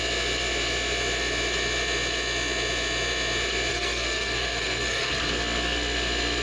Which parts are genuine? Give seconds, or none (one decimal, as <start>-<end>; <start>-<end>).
0.0-3.7; 5.0-6.4